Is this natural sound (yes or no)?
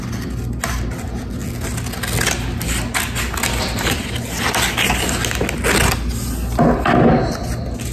yes